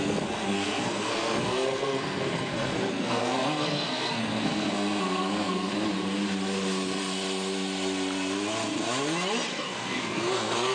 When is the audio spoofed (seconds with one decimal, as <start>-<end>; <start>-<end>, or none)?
0.0-5.7; 9.5-10.7